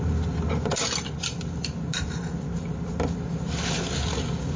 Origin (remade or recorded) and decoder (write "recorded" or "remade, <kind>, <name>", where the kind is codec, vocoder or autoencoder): recorded